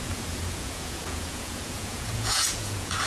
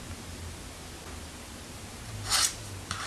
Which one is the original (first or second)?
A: second